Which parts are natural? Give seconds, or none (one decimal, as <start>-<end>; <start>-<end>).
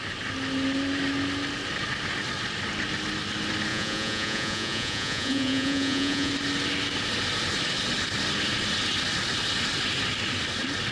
0.0-3.7; 6.3-10.9